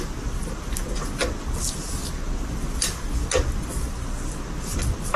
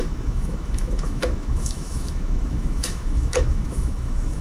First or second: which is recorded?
first